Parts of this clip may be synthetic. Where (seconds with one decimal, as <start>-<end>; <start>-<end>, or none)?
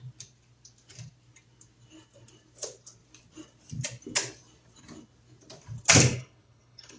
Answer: 6.1-7.0